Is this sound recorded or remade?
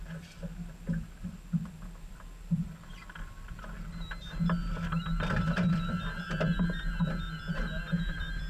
recorded